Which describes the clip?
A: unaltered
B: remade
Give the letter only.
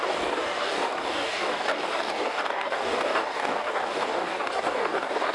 B